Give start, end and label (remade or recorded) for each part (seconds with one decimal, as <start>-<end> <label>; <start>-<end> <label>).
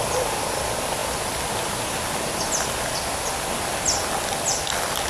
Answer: 0.0-5.1 recorded